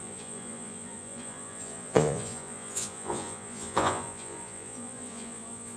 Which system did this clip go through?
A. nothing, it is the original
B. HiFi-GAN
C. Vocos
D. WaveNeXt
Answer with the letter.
C